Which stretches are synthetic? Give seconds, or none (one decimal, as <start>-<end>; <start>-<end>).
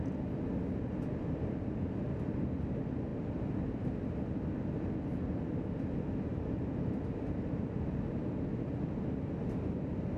none